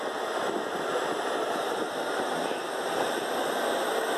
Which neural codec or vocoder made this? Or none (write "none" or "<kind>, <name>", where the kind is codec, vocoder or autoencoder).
none